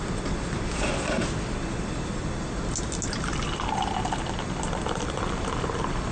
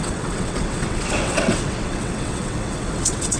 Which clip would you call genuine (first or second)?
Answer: first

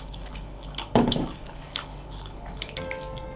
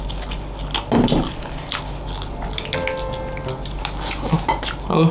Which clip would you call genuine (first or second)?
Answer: second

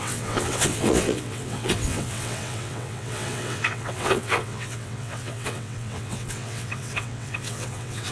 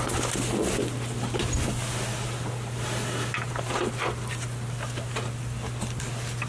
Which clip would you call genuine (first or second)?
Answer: second